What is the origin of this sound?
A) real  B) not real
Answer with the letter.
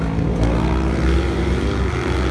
A